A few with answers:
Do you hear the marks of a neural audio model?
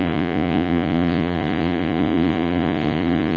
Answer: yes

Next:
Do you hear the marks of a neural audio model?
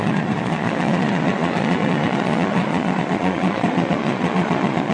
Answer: yes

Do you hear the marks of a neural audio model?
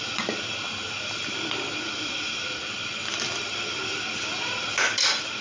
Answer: no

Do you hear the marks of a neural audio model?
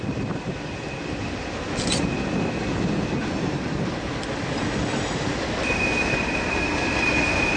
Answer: no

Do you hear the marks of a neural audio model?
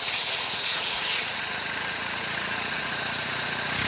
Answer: yes